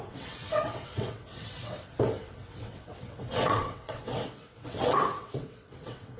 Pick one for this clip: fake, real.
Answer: fake